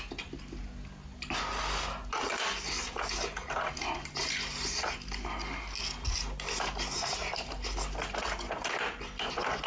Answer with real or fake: real